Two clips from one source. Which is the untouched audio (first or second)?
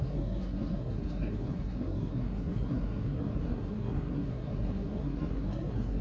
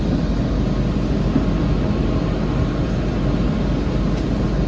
second